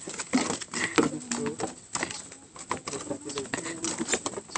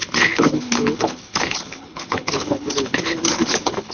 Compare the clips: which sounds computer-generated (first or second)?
second